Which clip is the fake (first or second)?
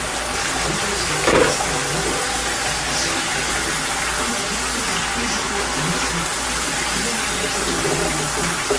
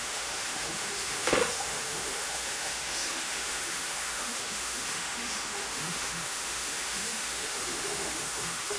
second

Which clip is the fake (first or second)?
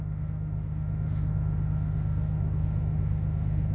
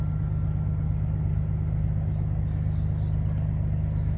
first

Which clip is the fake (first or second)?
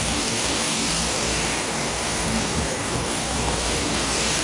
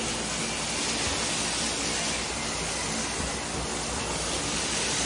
first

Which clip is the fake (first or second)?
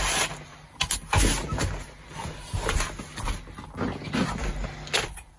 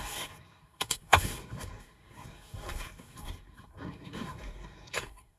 second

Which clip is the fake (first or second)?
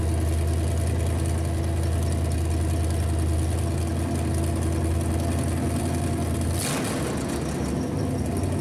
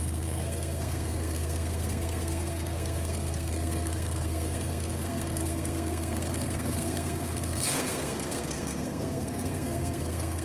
second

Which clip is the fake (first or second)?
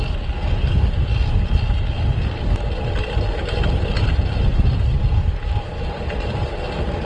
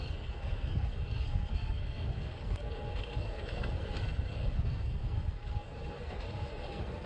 second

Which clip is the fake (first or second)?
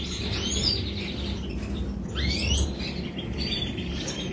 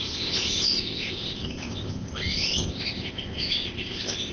second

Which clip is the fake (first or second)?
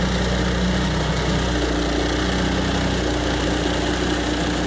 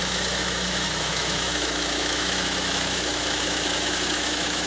second